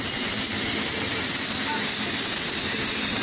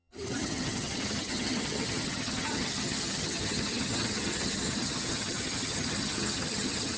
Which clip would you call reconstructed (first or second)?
second